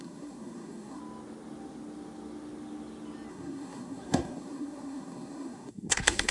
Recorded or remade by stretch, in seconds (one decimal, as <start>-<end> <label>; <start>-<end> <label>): 0.0-1.0 remade; 1.0-3.3 recorded; 3.3-6.3 remade